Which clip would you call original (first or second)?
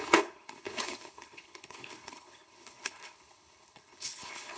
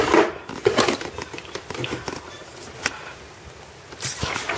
second